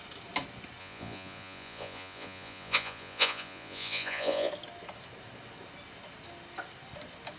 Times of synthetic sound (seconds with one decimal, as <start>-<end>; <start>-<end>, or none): 0.8-4.5